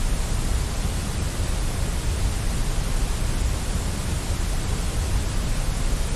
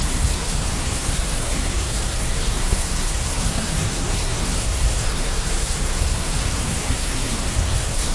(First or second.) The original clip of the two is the first